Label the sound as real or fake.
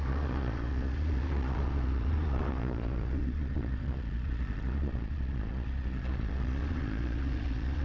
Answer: fake